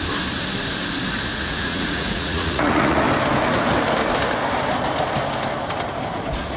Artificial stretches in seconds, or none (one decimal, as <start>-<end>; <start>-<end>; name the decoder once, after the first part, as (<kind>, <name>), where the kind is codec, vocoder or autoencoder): 1.3-3.0 (vocoder, Vocos)